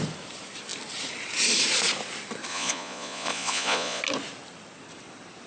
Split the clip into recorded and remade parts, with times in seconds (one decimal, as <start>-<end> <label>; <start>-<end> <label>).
0.0-2.5 recorded; 2.5-4.0 remade; 4.0-5.5 recorded

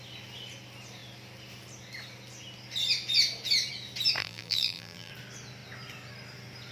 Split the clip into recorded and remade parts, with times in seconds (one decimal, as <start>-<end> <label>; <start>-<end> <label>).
0.0-4.2 recorded; 4.2-5.1 remade; 5.1-6.7 recorded

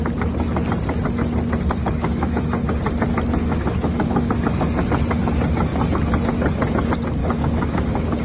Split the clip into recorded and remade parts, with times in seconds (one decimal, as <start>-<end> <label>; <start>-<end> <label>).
0.0-1.8 recorded; 1.8-2.4 remade; 2.4-3.4 recorded; 3.4-4.3 remade; 4.3-7.2 recorded; 7.2-8.2 remade

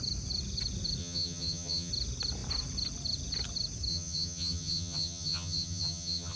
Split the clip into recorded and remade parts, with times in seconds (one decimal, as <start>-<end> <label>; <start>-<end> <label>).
0.0-1.0 recorded; 1.0-1.9 remade; 1.9-3.9 recorded; 3.9-6.4 remade

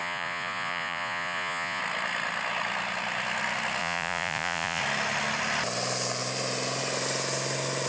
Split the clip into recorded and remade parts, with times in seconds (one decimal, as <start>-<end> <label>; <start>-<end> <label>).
0.0-1.8 remade; 1.8-3.8 recorded; 3.8-4.8 remade; 4.8-7.9 recorded

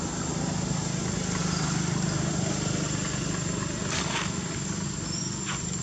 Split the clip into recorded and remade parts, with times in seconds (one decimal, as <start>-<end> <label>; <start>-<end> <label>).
0.0-5.8 recorded